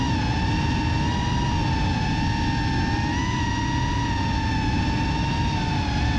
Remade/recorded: recorded